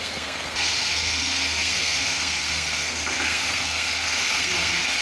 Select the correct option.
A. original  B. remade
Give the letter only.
B